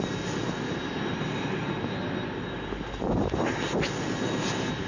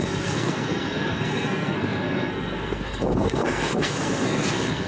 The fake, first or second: second